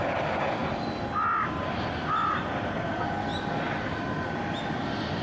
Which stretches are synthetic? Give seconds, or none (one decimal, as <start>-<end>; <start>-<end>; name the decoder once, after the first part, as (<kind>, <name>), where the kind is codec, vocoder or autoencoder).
none